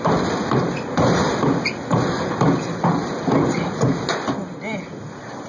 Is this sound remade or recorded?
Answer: recorded